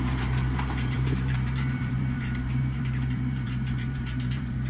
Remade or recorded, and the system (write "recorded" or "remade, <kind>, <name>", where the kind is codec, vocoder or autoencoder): remade, vocoder, BigVGAN v2